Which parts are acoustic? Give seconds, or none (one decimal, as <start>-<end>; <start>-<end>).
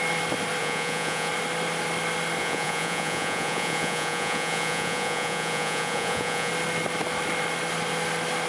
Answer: 0.0-0.6; 1.3-2.4; 6.5-8.5